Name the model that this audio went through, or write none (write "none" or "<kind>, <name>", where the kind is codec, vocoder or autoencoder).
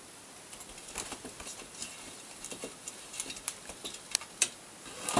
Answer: none